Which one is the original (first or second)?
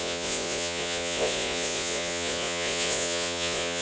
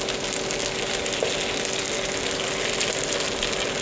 second